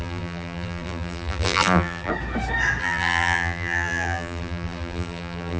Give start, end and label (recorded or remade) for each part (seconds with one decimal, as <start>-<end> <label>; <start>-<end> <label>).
0.0-2.1 remade; 2.1-2.8 recorded; 2.8-5.6 remade